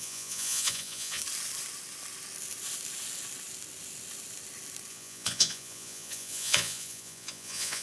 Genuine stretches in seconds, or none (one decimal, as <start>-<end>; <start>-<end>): 1.2-4.9